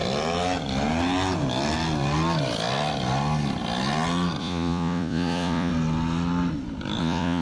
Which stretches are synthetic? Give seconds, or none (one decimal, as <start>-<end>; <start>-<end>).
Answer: 4.4-5.7; 7.0-7.4